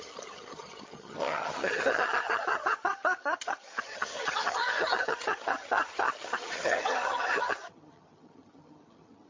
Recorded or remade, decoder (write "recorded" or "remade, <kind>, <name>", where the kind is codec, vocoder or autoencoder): remade, vocoder, HiFi-GAN